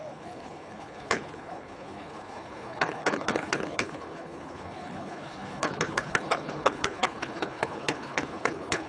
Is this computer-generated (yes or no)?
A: yes